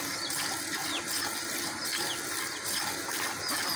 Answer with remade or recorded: recorded